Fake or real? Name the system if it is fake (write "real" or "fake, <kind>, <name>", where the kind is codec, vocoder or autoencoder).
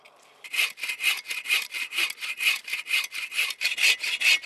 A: real